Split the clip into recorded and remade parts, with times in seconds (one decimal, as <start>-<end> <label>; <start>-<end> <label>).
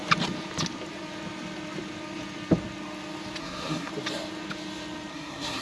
0.0-3.4 recorded; 3.4-3.9 remade; 3.9-5.1 recorded; 5.1-5.6 remade